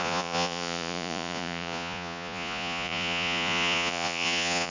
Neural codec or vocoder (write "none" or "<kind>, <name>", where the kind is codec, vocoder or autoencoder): vocoder, Vocos